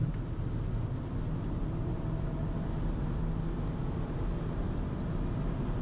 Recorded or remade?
recorded